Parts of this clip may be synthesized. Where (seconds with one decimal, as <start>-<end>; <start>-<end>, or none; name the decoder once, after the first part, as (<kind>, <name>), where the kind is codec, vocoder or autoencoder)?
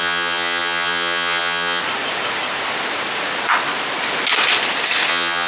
0.0-1.8 (vocoder, HiFi-GAN); 5.1-5.5